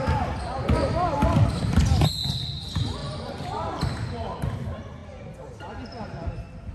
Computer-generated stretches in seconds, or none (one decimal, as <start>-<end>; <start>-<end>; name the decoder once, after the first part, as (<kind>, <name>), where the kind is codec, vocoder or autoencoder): 0.0-5.0 (vocoder, BigVGAN v2)

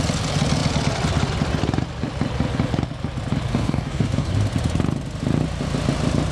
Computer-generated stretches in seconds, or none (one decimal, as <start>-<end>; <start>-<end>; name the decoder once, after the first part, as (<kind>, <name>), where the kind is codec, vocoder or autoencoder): 3.5-4.3 (codec, DAC)

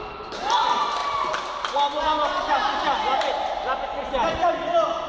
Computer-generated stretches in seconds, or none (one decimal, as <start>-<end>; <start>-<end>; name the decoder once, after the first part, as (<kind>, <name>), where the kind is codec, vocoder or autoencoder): none